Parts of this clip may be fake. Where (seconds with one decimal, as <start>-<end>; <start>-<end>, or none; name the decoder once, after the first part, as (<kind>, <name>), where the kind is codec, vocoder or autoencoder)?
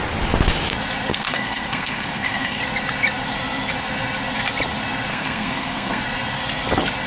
1.1-2.6 (codec, SNAC); 5.1-6.0